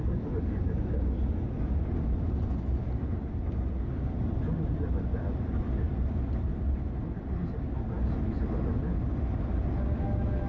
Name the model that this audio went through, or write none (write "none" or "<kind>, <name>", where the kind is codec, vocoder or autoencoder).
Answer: none